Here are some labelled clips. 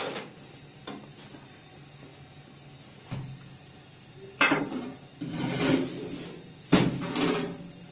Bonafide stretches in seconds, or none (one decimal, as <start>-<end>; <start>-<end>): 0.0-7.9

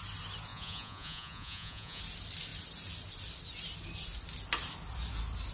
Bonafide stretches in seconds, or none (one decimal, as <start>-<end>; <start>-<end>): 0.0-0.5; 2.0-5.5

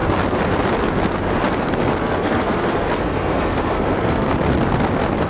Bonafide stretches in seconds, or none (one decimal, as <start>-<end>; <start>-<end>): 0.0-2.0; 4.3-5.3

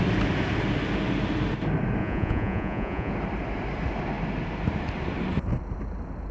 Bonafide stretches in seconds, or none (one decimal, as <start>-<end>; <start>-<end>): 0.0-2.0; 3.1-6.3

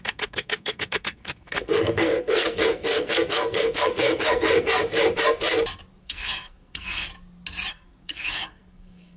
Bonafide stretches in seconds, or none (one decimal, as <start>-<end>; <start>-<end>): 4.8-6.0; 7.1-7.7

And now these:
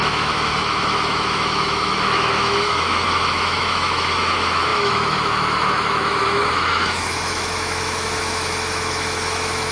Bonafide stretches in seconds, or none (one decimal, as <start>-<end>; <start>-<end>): none

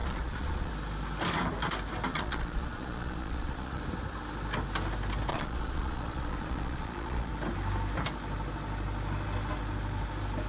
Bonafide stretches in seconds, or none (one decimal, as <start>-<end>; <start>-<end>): 0.7-2.1; 3.8-5.3; 7.3-10.5

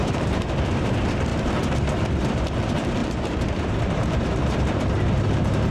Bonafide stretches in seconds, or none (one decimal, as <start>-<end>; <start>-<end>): none